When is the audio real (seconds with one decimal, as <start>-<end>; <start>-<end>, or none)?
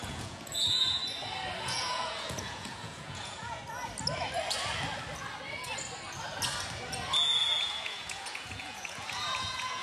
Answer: 1.0-1.6; 3.6-7.6